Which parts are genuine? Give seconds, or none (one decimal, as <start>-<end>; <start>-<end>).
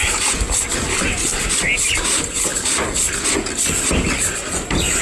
0.0-1.3; 1.9-5.0